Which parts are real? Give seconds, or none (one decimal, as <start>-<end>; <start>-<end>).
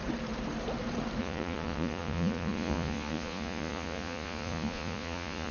0.0-1.2